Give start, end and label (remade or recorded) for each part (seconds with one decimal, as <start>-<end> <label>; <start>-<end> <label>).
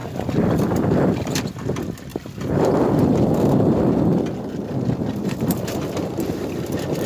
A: 0.0-1.4 remade; 1.4-2.1 recorded; 2.1-6.0 remade; 6.0-7.1 recorded